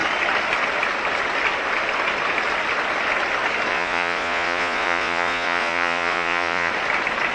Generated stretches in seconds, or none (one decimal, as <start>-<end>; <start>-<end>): 3.7-6.7